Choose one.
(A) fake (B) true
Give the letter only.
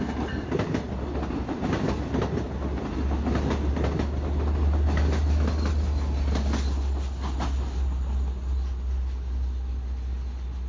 B